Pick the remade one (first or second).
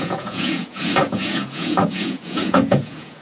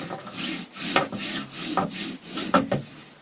first